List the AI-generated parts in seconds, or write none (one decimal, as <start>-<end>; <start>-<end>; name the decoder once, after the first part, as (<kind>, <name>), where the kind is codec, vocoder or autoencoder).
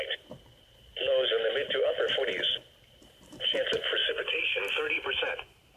3.0-3.6 (vocoder, BigVGAN v2); 4.0-5.8